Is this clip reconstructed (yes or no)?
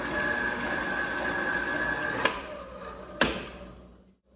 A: no